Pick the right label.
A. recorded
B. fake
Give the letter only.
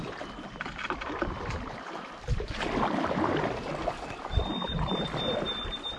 A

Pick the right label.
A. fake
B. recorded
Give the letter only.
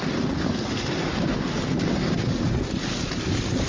B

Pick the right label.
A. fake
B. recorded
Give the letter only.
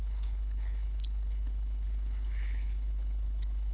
A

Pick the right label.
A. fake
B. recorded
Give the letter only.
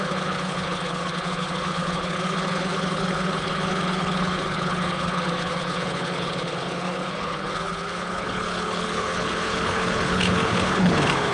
A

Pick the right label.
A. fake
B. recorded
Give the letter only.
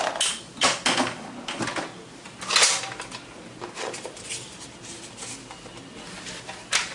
B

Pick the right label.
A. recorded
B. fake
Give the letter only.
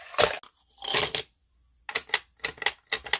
A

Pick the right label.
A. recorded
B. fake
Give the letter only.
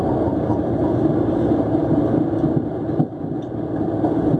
A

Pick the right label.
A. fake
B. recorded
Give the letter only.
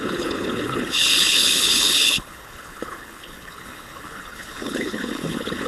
A